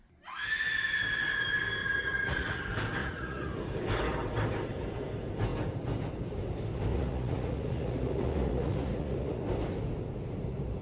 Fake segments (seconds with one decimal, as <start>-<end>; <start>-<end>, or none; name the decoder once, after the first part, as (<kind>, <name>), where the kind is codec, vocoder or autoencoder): 1.8-2.6 (vocoder, Vocos); 3.0-3.5; 6.9-9.4